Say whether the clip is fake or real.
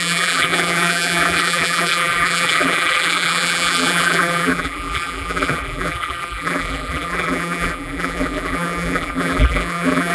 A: fake